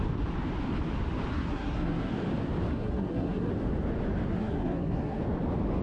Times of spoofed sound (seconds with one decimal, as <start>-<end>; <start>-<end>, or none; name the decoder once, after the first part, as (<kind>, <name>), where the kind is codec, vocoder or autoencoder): 1.3-2.1 (codec, SNAC); 2.7-3.5; 4.3-5.2